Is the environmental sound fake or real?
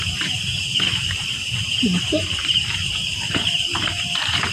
fake